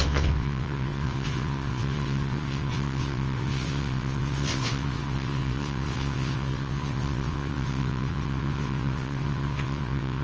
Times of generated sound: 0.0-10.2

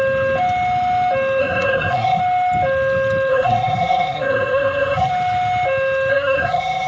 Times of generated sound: 1.4-2.2; 3.3-5.1; 6.1-6.9

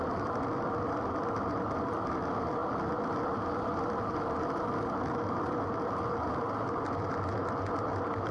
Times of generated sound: none

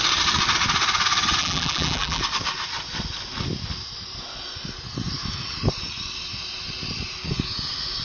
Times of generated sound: 1.4-2.2